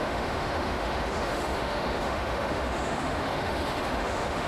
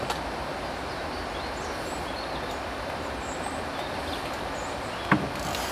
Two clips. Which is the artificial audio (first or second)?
first